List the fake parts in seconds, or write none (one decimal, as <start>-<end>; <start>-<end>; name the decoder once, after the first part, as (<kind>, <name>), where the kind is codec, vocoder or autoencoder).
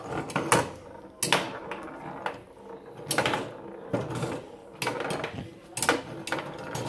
none